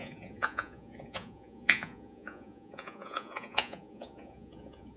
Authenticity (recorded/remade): remade